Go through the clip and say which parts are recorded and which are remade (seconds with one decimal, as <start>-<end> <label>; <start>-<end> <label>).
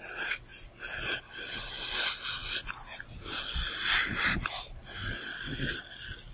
0.0-6.3 recorded